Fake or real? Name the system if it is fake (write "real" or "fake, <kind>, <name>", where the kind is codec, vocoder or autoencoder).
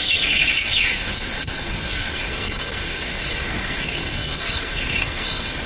fake, codec, SNAC